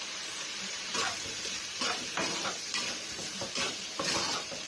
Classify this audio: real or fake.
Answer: fake